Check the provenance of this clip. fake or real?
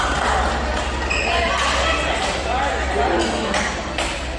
real